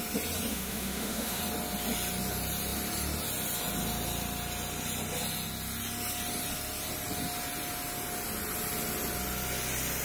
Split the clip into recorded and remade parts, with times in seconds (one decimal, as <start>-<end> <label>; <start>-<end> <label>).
0.0-0.5 recorded; 0.5-1.4 remade; 1.4-10.0 recorded

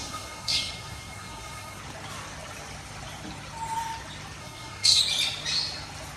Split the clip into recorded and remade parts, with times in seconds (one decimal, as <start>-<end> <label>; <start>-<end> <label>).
0.0-1.8 remade; 1.8-4.4 recorded; 4.4-5.0 remade; 5.0-6.2 recorded

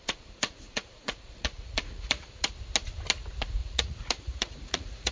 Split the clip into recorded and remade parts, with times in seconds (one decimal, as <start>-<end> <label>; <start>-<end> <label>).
0.0-2.5 remade; 2.5-3.6 recorded; 3.6-5.1 remade

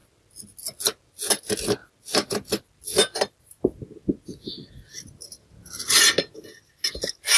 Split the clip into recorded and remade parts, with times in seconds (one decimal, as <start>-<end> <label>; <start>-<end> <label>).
0.0-7.4 recorded

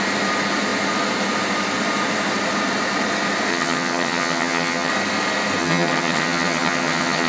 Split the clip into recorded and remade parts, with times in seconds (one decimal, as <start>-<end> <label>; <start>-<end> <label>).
0.0-3.5 recorded; 3.5-4.9 remade; 4.9-5.6 recorded; 5.6-7.3 remade

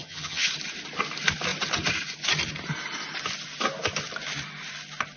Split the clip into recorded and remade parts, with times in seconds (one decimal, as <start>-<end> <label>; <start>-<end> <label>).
0.0-0.5 remade; 0.5-5.2 recorded